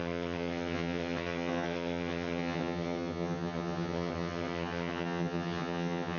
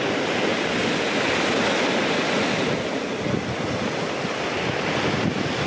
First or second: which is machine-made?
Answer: first